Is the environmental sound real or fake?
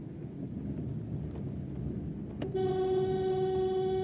real